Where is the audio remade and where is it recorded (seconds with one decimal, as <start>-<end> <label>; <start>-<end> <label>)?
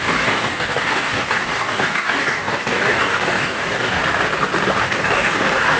0.0-4.0 remade; 4.0-4.8 recorded; 4.8-5.8 remade